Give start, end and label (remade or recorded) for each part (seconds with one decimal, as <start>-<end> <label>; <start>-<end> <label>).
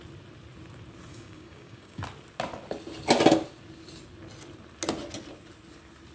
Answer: 0.0-1.1 recorded; 1.1-2.0 remade; 2.0-6.1 recorded